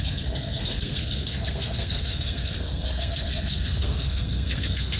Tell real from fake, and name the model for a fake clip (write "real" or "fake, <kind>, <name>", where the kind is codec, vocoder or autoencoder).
fake, codec, SNAC